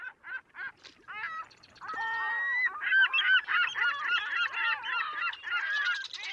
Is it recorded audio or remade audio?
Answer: recorded